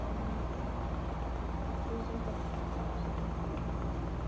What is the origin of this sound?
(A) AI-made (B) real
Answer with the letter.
B